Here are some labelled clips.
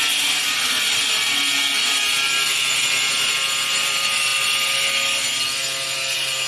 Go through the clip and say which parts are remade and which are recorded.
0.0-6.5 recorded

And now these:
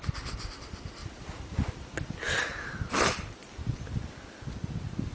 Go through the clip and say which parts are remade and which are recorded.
0.0-5.1 recorded